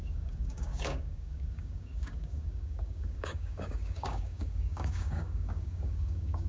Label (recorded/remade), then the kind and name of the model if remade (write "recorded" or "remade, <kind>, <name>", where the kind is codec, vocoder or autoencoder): remade, codec, DAC